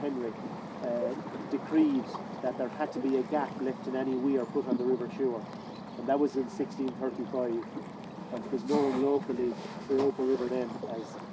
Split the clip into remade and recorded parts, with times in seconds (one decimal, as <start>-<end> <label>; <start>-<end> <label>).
0.0-6.3 recorded; 6.3-6.8 remade; 6.8-8.2 recorded; 8.2-10.5 remade; 10.5-11.3 recorded